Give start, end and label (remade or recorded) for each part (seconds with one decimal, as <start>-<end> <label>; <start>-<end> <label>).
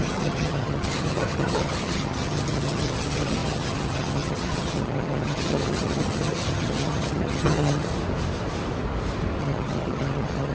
0.0-7.9 remade; 7.9-9.4 recorded; 9.4-10.5 remade